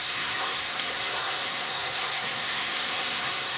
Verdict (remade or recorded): remade